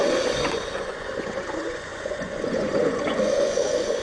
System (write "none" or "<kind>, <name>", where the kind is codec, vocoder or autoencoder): vocoder, Vocos